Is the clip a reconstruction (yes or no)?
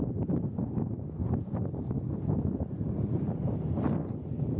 no